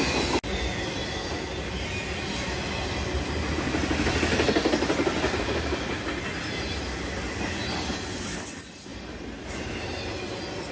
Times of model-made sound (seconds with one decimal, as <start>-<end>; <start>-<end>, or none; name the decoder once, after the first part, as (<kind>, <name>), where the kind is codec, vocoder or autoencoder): 8.9-9.7 (vocoder, BigVGAN v2)

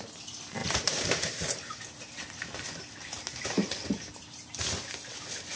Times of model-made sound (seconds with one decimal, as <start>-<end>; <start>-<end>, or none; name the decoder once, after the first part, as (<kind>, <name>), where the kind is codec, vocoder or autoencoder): 0.6-3.8 (vocoder, BigVGAN v2)

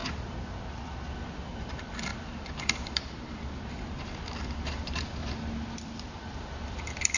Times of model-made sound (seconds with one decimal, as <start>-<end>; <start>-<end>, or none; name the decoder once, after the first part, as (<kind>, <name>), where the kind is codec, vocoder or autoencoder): 1.7-5.2 (vocoder, BigVGAN v2); 5.7-7.2

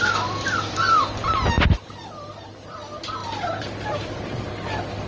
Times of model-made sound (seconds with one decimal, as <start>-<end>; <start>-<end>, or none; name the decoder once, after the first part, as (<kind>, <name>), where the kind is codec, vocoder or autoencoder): 3.2-4.5 (vocoder, BigVGAN v2)

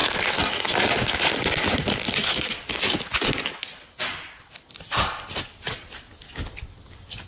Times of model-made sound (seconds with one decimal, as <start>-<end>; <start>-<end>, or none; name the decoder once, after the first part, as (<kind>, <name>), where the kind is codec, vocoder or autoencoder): 0.0-0.5 (vocoder, BigVGAN v2)

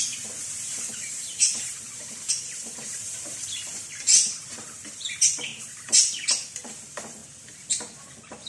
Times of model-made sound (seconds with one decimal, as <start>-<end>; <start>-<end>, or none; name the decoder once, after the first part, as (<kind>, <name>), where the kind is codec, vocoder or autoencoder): 0.0-5.5 (vocoder, BigVGAN v2); 6.7-7.2

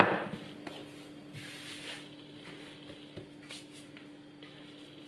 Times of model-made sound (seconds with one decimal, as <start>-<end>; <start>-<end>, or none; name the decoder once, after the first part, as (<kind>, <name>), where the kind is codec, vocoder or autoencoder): none